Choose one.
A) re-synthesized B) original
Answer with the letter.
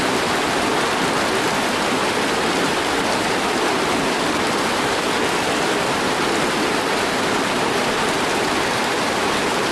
B